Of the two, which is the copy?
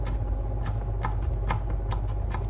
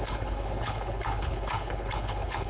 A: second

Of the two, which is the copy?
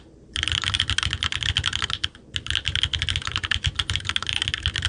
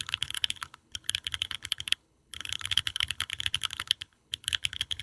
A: second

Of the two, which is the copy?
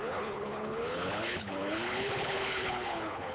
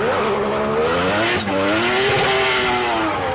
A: first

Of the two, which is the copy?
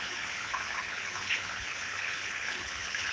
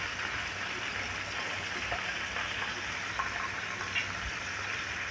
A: first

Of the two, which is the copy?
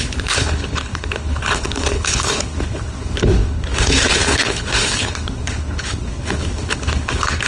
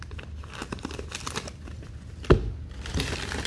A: first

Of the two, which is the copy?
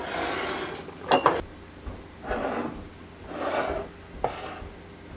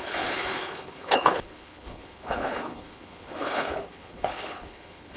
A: second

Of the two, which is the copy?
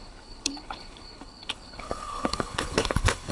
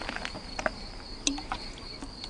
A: first